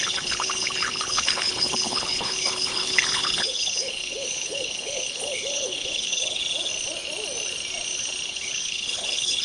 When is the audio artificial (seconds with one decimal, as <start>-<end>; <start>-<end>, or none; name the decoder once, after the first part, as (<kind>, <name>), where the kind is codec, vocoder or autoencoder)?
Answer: 0.0-6.4 (codec, HILCodec); 8.3-9.4